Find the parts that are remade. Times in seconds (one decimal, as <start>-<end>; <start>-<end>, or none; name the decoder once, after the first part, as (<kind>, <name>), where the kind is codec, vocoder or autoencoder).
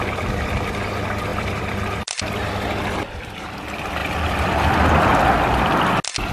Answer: 1.3-2.7 (vocoder, BigVGAN v2); 4.0-5.2